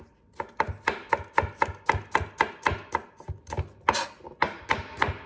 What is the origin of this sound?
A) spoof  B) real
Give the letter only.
B